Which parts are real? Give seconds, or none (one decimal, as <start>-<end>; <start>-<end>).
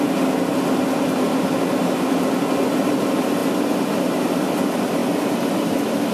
0.0-6.1